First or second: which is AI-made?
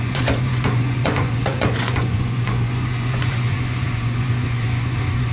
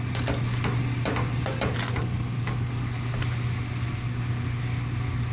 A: first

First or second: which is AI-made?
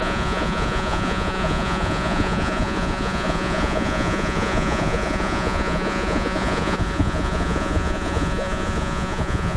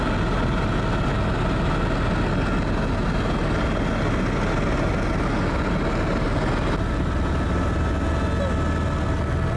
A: first